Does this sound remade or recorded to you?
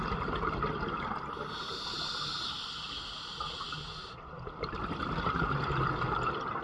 recorded